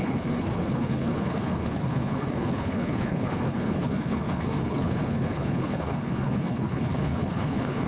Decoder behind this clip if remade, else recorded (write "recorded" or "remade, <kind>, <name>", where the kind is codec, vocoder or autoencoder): remade, codec, HILCodec